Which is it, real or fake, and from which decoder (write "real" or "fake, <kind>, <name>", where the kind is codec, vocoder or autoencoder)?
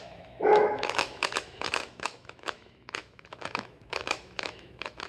fake, autoencoder, DAC-VAE